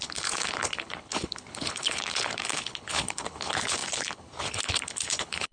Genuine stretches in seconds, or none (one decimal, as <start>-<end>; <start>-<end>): none